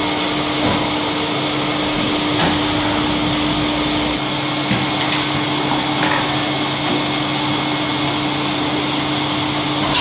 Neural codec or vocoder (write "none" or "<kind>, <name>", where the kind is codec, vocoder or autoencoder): none